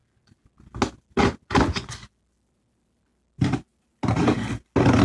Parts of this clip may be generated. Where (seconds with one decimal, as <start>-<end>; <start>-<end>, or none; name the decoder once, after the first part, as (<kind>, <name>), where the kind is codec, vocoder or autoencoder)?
none